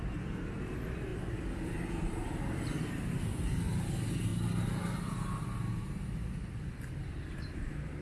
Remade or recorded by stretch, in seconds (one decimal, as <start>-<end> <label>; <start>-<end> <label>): 0.0-8.0 recorded